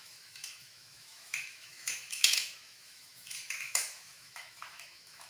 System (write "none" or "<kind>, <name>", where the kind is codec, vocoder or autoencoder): autoencoder, DAC-VAE